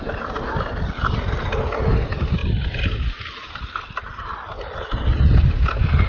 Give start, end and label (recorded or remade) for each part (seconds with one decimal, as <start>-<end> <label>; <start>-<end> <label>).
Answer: 0.0-6.1 recorded

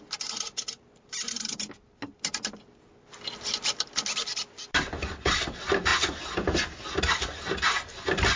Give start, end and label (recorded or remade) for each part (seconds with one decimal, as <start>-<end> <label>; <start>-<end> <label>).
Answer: 0.0-8.4 recorded

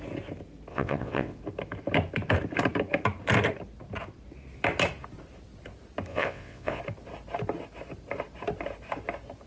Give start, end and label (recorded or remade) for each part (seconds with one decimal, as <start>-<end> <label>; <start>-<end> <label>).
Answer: 0.0-0.7 recorded; 0.7-1.4 remade; 1.4-6.1 recorded; 6.1-6.8 remade; 6.8-9.5 recorded

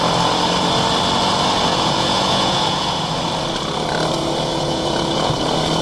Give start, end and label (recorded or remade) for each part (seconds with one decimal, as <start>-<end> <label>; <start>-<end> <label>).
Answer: 0.0-1.7 recorded; 1.7-3.1 remade; 3.1-4.5 recorded; 4.5-5.3 remade; 5.3-5.8 recorded

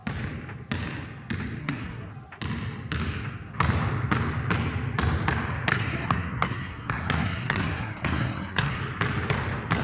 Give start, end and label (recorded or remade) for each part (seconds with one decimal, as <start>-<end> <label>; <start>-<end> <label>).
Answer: 0.0-1.6 recorded; 1.6-2.1 remade; 2.1-5.7 recorded; 5.7-8.8 remade; 8.8-9.8 recorded

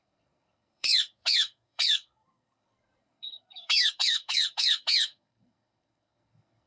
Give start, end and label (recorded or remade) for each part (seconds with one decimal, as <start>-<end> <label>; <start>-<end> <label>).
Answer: 0.0-6.7 remade

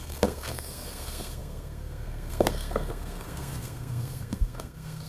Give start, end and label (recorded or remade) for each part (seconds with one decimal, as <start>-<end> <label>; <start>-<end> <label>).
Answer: 0.0-5.1 remade

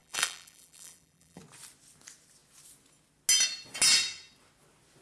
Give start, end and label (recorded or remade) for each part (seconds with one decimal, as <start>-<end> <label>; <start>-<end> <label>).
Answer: 0.0-1.4 remade; 1.4-5.0 recorded